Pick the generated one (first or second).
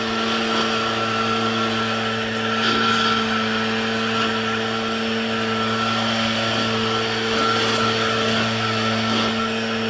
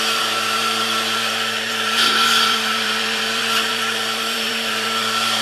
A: second